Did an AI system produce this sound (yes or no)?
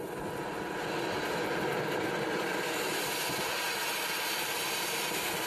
no